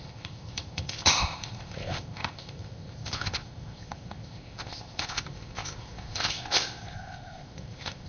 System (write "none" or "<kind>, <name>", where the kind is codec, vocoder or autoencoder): codec, ZipCodec